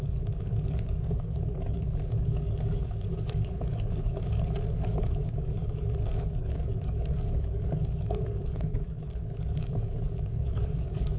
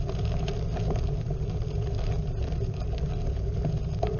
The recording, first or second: second